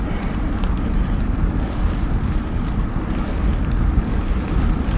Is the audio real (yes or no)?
yes